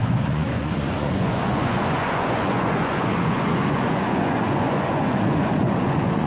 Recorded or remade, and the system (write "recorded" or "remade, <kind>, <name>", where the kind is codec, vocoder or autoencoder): remade, vocoder, Vocos